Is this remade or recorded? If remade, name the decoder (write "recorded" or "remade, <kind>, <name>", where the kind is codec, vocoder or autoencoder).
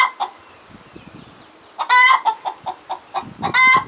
recorded